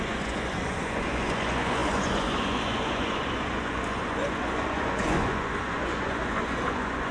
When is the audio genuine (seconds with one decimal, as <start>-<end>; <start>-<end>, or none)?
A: none

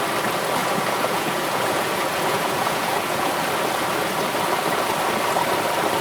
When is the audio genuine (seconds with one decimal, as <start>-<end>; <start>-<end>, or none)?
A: 0.0-0.6; 3.3-6.0

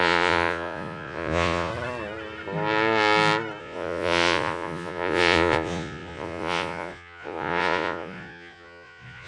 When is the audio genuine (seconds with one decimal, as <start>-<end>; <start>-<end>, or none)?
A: 1.7-3.6

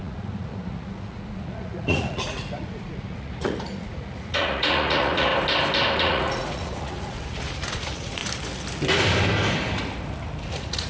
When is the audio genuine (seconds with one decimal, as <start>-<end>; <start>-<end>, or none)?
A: 5.3-6.0; 8.2-10.5